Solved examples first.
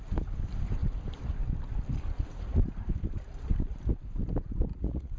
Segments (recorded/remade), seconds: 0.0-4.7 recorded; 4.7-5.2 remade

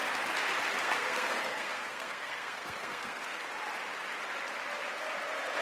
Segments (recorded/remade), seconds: 0.0-0.8 recorded; 0.8-3.4 remade; 3.4-5.6 recorded